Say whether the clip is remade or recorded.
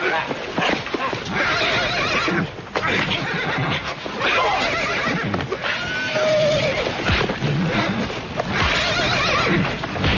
recorded